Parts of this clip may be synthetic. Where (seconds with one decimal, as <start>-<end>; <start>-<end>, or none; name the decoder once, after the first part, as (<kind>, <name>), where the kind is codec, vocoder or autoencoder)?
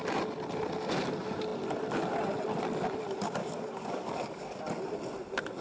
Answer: 3.4-4.6 (codec, DAC)